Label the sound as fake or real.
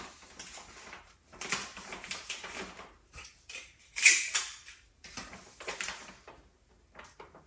fake